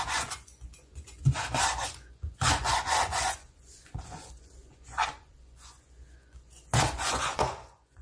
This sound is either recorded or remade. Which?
remade